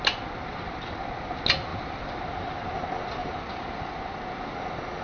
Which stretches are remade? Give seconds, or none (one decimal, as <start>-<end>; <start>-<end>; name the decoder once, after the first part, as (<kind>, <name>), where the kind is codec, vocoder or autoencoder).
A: 1.7-2.2 (vocoder, BigVGAN v2); 3.2-4.0